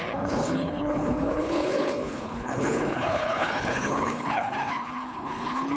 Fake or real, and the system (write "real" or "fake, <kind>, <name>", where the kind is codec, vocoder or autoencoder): fake, codec, HILCodec